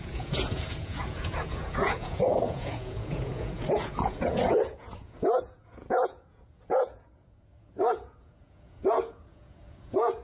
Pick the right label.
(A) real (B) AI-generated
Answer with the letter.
B